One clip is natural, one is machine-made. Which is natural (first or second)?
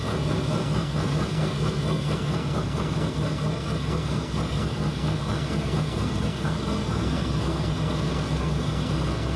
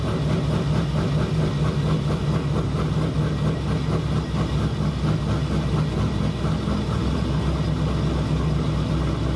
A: second